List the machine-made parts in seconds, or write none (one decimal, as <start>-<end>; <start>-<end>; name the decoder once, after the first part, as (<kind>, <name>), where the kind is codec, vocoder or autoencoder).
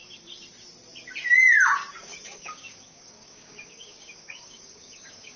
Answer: 1.9-5.4 (codec, DAC)